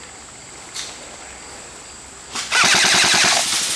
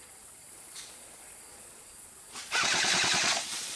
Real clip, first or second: first